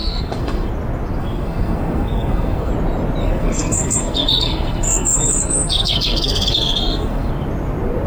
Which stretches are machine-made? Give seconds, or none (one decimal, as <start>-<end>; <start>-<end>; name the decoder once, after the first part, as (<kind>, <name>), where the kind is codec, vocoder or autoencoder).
0.0-0.7 (codec, SNAC); 1.2-2.7; 3.2-7.3